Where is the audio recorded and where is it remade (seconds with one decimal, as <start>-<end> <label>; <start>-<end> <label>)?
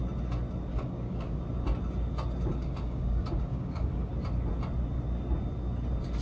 0.0-0.7 recorded; 0.7-1.4 remade; 1.4-2.5 recorded; 2.5-4.1 remade; 4.1-6.2 recorded